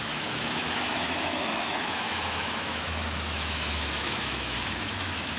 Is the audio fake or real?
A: fake